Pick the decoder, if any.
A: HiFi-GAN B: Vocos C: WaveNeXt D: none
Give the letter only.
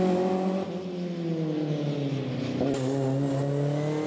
D